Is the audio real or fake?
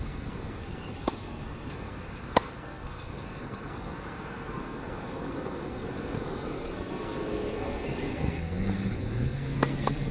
fake